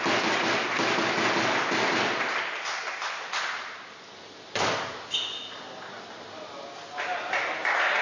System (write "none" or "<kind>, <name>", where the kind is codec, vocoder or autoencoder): none